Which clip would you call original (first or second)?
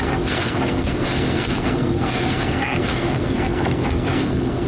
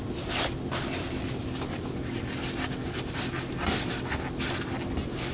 second